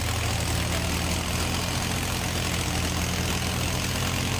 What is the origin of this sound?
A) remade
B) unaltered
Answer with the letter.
B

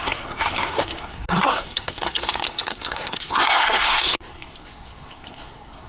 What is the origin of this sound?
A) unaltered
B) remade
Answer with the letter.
B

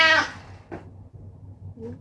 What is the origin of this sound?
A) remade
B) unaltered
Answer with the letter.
B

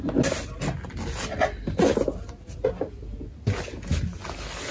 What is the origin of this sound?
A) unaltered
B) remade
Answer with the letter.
A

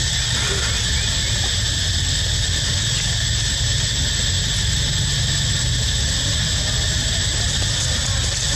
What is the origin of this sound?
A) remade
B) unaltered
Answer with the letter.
B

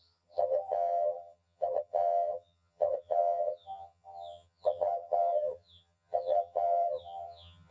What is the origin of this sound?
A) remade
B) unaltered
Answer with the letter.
A